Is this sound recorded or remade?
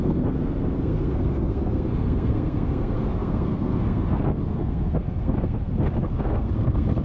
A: remade